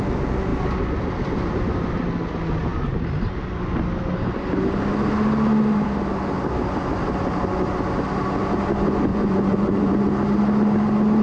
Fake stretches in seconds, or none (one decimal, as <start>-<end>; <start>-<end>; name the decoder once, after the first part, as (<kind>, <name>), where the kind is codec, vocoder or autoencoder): 9.1-9.9 (vocoder, Vocos)